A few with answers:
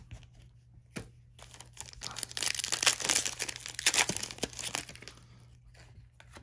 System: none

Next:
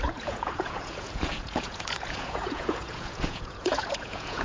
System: vocoder, Vocos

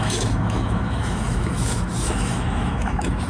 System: autoencoder, DAC-VAE